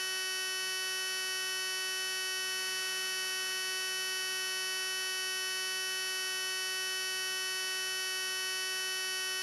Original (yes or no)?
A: yes